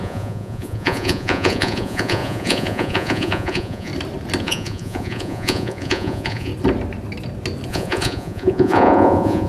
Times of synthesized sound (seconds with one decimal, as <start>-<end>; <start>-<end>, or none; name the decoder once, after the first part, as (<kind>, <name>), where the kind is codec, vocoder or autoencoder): 0.0-3.9 (vocoder, Vocos); 4.4-6.5; 7.7-9.5